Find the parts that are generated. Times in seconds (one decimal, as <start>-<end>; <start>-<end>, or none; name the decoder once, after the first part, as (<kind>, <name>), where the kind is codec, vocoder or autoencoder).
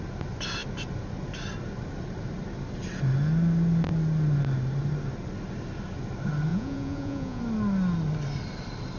6.5-7.4 (vocoder, Vocos)